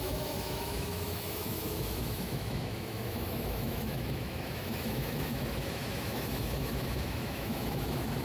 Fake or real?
fake